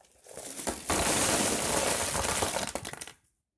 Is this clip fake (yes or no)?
yes